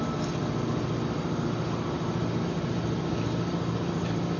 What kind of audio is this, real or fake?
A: real